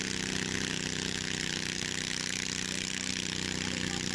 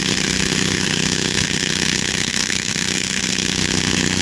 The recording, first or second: first